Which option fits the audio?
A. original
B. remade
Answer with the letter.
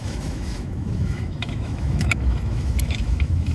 B